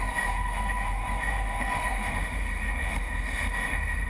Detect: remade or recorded remade